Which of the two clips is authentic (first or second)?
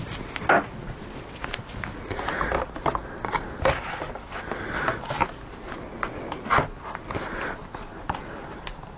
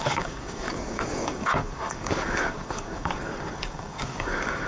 first